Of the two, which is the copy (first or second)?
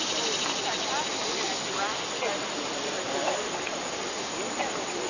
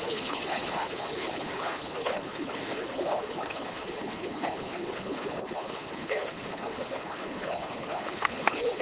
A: second